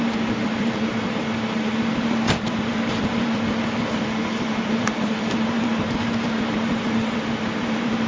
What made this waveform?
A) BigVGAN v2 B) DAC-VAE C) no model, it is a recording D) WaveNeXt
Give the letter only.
A